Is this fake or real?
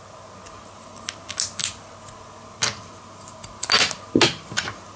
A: real